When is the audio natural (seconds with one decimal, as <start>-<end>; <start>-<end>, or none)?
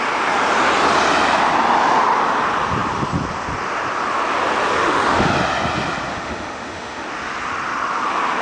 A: 0.0-4.7; 5.3-6.1; 7.1-8.4